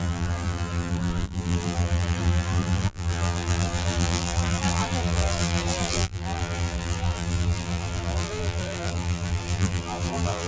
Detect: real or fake fake